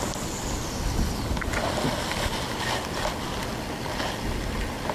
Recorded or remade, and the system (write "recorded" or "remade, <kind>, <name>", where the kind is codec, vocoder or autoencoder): recorded